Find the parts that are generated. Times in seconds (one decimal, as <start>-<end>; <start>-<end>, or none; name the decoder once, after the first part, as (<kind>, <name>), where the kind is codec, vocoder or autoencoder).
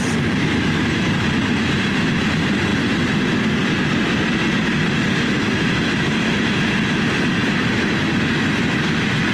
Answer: 7.4-8.0 (vocoder, BigVGAN v2)